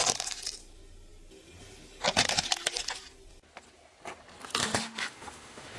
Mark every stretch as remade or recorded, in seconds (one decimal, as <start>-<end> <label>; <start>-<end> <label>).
0.0-4.6 recorded; 4.6-5.8 remade

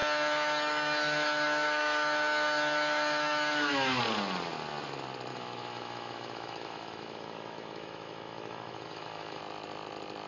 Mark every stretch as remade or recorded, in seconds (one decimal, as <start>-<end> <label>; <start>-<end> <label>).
0.0-4.0 remade; 4.0-5.3 recorded; 5.3-9.4 remade; 9.4-10.3 recorded

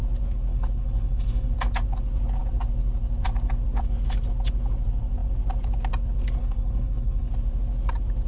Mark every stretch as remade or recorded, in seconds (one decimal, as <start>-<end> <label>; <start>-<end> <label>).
0.0-0.5 recorded; 0.5-1.5 remade; 1.5-6.4 recorded; 6.4-7.3 remade; 7.3-8.3 recorded

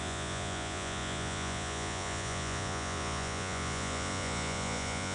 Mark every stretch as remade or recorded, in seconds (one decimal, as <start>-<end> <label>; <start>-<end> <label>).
0.0-5.1 remade

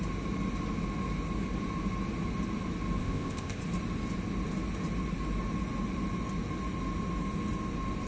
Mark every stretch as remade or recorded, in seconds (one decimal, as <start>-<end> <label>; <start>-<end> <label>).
0.0-3.0 recorded; 3.0-3.6 remade; 3.6-8.1 recorded